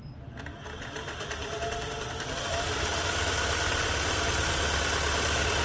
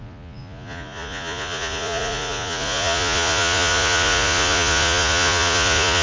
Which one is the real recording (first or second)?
first